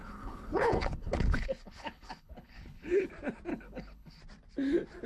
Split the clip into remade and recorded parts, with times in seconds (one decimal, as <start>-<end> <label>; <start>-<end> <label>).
0.0-3.1 remade; 3.1-3.5 recorded; 3.5-4.2 remade; 4.2-5.1 recorded